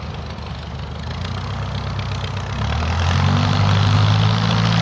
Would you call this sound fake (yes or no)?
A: no